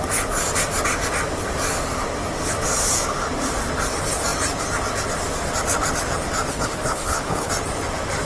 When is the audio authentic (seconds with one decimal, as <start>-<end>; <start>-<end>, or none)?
0.0-6.5; 7.5-8.3